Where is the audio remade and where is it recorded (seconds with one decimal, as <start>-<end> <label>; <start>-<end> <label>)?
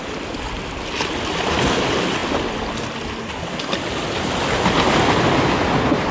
0.0-6.1 recorded